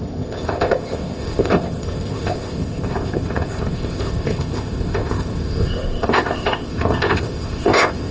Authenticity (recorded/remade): remade